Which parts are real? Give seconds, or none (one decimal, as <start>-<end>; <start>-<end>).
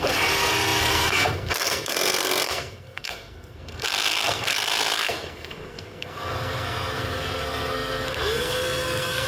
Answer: none